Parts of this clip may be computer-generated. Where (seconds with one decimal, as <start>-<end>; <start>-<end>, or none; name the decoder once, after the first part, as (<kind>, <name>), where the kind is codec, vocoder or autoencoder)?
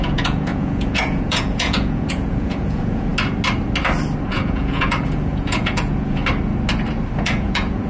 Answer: 0.0-3.1 (vocoder, Vocos); 4.3-6.2; 7.2-7.9